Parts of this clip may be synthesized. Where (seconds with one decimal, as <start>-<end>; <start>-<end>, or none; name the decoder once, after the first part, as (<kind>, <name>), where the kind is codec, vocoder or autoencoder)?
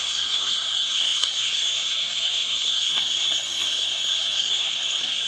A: 0.0-5.3 (codec, SNAC)